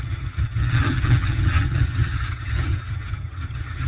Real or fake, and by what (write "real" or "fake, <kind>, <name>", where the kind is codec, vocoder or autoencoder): fake, vocoder, HiFi-GAN